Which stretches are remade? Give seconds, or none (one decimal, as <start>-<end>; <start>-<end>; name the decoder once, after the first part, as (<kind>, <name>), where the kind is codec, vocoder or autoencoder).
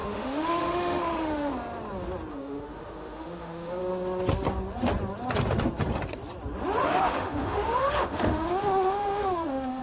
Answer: 0.0-1.5 (autoencoder, DAC-VAE); 2.3-3.8; 6.8-9.8